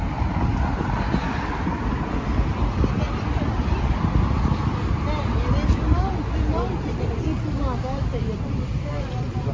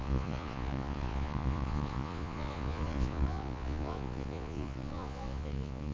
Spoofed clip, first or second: second